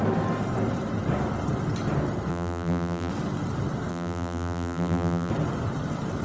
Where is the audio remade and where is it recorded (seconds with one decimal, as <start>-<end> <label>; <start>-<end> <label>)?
0.0-2.3 recorded; 2.3-3.1 remade; 3.1-3.9 recorded; 3.9-5.3 remade; 5.3-6.2 recorded